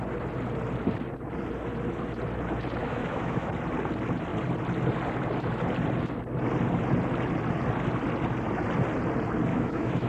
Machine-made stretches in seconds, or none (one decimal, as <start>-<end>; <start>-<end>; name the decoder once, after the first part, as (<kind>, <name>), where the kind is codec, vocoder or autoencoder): 2.8-3.5 (autoencoder, DAC-VAE); 9.5-10.1